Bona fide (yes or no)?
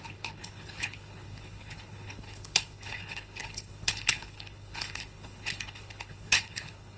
no